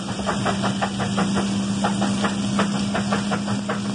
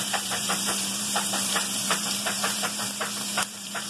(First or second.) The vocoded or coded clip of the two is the second